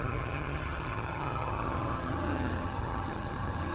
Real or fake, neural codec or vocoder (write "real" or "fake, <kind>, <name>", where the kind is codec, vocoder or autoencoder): fake, vocoder, HiFi-GAN